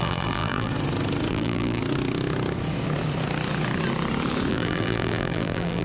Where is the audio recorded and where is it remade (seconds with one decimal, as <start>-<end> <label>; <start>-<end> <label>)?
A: 0.0-0.7 remade; 0.7-1.3 recorded; 1.3-1.8 remade; 1.8-4.5 recorded; 4.5-5.8 remade